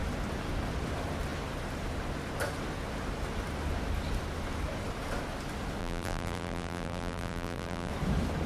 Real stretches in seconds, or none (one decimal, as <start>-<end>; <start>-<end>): 0.0-5.8; 7.9-8.5